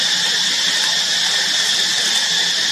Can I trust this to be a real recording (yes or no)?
yes